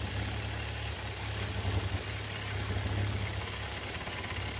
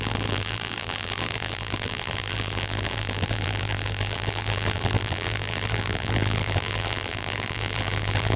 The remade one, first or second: second